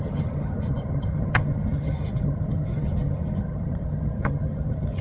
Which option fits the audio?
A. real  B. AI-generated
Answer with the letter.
B